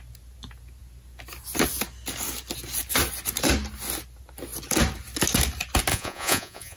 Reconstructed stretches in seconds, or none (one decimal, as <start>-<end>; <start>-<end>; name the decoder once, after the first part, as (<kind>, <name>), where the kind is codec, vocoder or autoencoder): 5.9-6.8 (vocoder, Vocos)